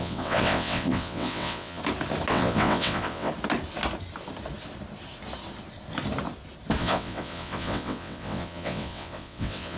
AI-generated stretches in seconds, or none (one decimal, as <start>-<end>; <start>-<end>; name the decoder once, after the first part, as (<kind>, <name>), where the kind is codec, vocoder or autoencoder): 0.0-1.8 (vocoder, WaveNeXt); 2.3-3.3; 6.8-9.8